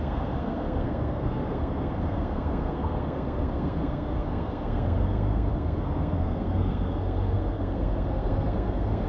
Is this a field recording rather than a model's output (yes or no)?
no